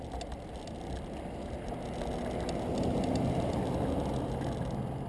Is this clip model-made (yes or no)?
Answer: no